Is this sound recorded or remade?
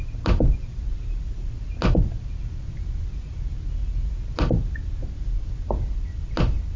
recorded